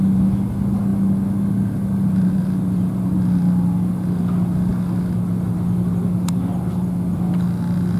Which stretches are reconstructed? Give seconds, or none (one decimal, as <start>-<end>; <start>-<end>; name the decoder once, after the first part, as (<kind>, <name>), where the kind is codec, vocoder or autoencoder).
none